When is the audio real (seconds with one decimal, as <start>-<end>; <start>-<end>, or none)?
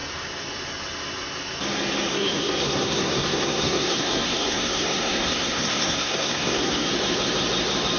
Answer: 0.0-2.1; 6.9-8.0